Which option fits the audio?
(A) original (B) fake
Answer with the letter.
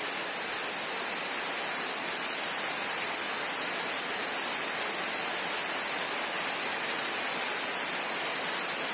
A